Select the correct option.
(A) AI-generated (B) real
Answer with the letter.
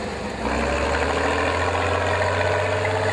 B